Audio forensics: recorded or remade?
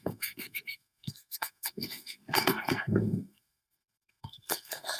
remade